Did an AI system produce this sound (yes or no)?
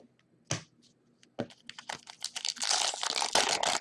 no